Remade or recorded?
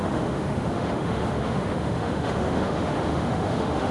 remade